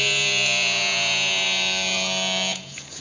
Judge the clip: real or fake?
fake